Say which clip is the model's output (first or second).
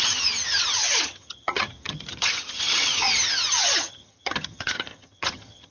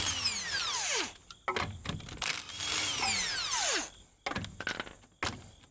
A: first